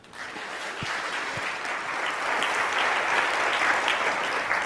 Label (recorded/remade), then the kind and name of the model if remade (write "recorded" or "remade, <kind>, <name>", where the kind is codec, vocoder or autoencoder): recorded